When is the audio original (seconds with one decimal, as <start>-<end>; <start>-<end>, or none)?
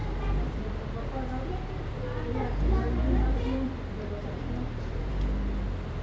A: 0.6-3.0; 5.1-6.0